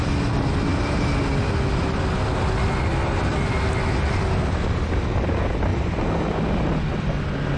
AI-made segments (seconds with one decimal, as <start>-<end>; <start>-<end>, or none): none